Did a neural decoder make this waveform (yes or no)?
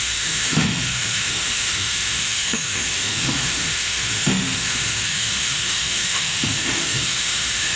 yes